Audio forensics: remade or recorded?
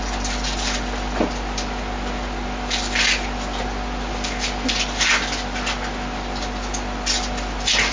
recorded